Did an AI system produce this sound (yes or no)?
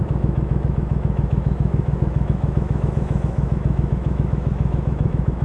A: yes